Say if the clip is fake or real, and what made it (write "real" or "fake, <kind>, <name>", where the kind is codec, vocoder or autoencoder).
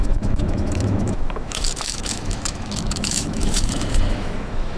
fake, autoencoder, DAC-VAE